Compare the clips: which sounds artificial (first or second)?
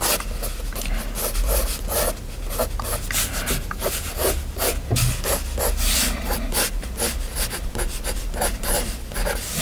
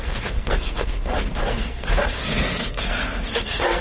second